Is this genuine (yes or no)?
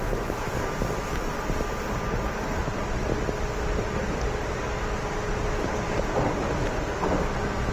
yes